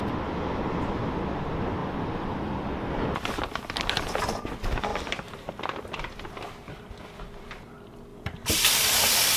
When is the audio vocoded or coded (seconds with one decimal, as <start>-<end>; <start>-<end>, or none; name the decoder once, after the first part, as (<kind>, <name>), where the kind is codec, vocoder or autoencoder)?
1.8-4.2 (vocoder, BigVGAN v2); 4.9-6.4; 8.1-8.7